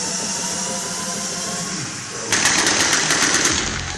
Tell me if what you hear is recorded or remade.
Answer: recorded